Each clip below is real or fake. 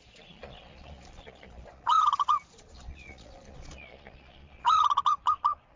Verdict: fake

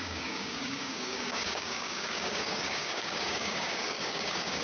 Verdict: fake